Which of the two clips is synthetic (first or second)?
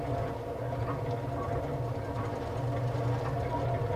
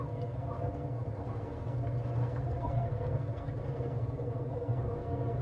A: second